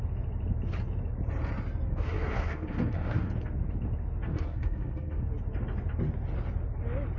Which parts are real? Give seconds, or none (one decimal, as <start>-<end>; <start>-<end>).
0.0-1.9; 3.3-4.3; 5.2-7.2